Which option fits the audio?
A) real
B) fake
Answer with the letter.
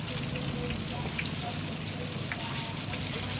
A